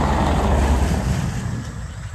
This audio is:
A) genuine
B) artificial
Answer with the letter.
A